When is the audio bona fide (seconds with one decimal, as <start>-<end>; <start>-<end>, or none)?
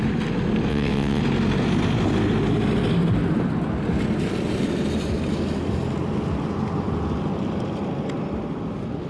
0.0-0.7; 1.2-9.1